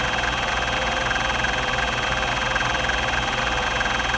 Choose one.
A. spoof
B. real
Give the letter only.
B